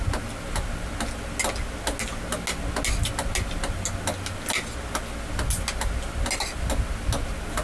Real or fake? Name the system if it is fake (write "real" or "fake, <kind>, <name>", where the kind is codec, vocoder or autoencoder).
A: real